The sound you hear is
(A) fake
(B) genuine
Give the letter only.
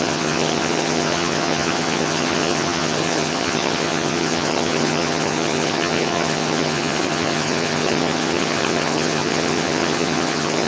A